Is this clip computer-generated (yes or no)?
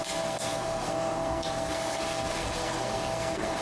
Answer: yes